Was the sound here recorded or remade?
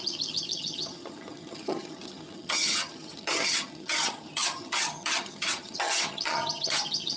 remade